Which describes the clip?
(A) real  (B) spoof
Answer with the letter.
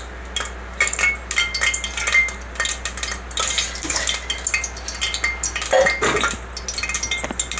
A